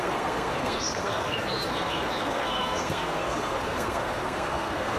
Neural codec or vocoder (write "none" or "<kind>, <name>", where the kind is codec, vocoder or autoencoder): codec, SNAC